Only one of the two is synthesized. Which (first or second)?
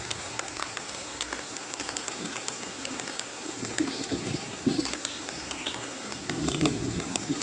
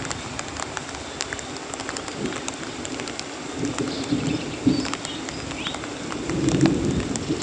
first